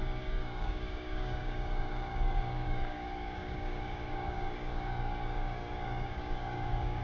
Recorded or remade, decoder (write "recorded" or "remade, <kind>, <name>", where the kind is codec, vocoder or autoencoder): remade, codec, DAC